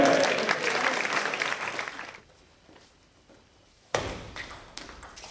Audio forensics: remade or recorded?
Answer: remade